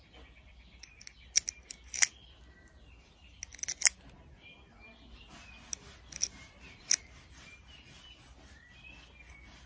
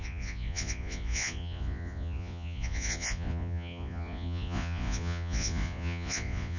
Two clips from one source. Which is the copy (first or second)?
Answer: second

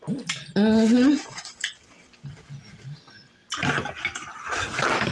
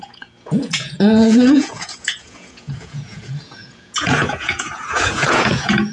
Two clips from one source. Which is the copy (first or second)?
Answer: second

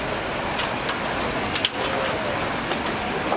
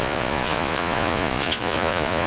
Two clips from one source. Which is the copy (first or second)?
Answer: second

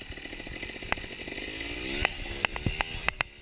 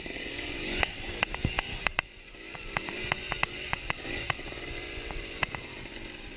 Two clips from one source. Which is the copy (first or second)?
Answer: second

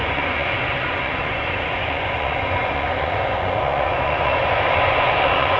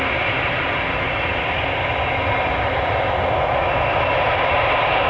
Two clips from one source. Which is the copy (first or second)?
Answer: first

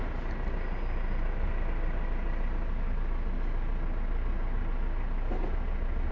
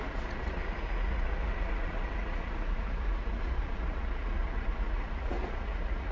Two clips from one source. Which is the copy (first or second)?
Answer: second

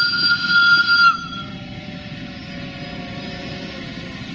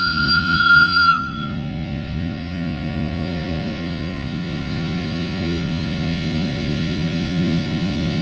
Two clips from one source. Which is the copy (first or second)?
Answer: second